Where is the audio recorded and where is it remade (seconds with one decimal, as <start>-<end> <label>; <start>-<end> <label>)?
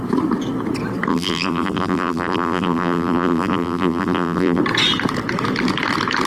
0.0-1.1 recorded; 1.1-4.6 remade; 4.6-6.3 recorded